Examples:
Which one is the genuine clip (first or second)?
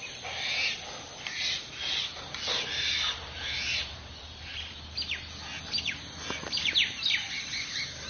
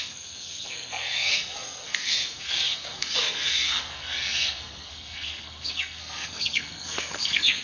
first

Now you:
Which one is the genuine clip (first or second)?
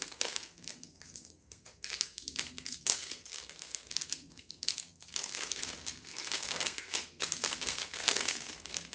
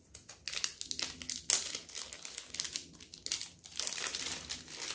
second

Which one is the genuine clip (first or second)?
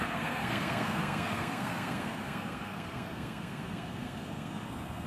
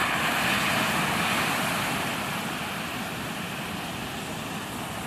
second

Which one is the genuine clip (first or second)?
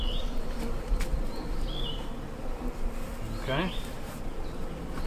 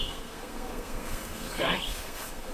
first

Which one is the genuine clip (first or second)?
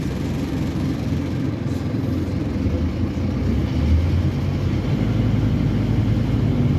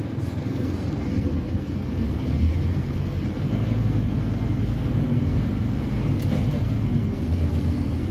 first